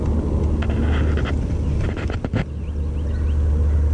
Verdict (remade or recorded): recorded